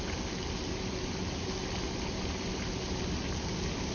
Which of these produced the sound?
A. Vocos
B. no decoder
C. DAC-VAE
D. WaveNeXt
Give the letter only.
B